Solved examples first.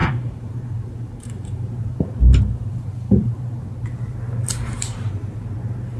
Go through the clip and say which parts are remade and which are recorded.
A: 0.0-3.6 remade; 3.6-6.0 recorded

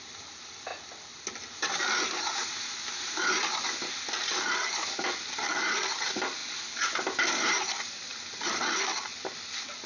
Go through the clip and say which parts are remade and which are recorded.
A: 0.0-0.7 remade; 0.7-3.9 recorded; 3.9-6.4 remade; 6.4-7.6 recorded; 7.6-9.9 remade

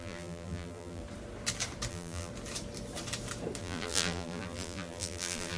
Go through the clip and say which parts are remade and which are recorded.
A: 0.0-1.0 remade; 1.0-1.9 recorded; 1.9-2.3 remade; 2.3-3.6 recorded; 3.6-5.6 remade

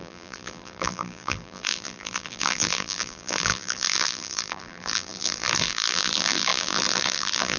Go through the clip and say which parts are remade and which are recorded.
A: 0.0-7.6 remade

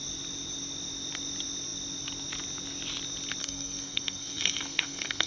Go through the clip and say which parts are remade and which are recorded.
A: 0.0-3.4 recorded; 3.4-5.3 remade

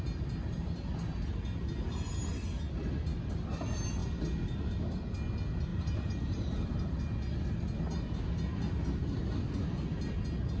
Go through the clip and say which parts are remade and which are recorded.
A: 0.0-5.7 recorded; 5.7-7.0 remade; 7.0-10.6 recorded

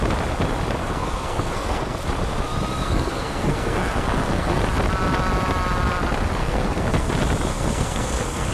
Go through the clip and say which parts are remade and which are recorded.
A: 0.0-0.8 recorded; 0.8-2.0 remade; 2.0-2.8 recorded; 2.8-4.6 remade; 4.6-6.4 recorded; 6.4-7.1 remade; 7.1-7.5 recorded; 7.5-8.5 remade

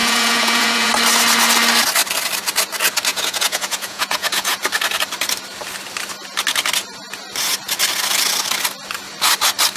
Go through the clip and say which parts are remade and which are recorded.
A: 0.0-0.9 remade; 0.9-3.1 recorded; 3.1-4.6 remade; 4.6-9.8 recorded